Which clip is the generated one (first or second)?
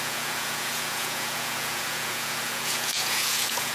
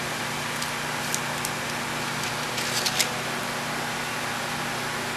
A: first